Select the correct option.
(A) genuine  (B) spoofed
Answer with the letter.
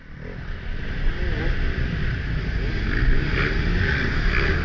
A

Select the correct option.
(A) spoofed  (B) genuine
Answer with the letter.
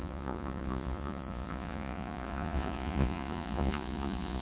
A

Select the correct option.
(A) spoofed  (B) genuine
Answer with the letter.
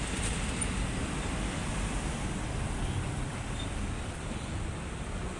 A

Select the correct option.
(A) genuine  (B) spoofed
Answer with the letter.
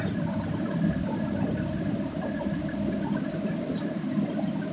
A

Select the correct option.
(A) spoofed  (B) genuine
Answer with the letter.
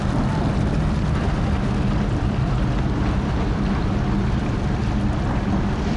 A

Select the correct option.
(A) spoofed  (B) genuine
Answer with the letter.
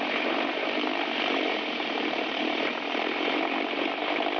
A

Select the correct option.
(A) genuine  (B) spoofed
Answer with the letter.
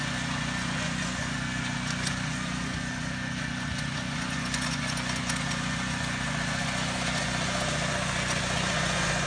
B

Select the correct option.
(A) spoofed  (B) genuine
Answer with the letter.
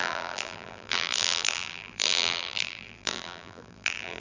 A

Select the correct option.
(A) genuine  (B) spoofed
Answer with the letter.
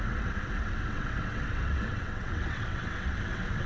B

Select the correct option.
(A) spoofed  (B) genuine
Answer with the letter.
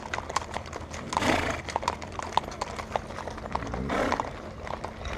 B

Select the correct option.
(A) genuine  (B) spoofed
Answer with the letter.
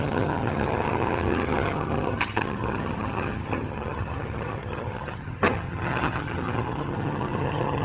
B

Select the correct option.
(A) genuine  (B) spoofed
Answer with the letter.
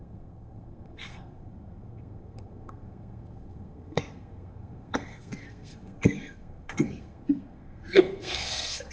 B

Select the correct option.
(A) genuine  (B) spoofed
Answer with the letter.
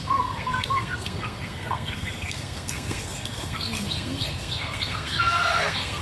B